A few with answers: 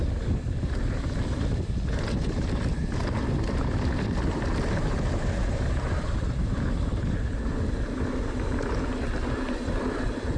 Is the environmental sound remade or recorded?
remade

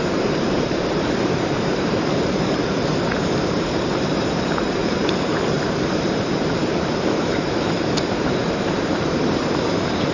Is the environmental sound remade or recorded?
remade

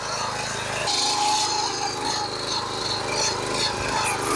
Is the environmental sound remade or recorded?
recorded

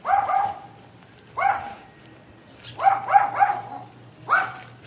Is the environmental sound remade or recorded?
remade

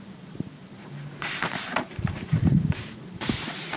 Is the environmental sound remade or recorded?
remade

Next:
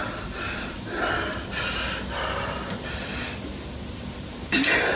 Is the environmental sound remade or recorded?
recorded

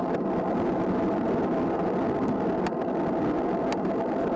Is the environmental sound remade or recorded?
recorded